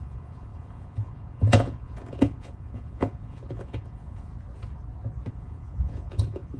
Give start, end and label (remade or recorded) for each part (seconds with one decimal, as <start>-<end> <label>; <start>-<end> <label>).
0.0-4.3 remade; 4.3-5.3 recorded; 5.3-6.6 remade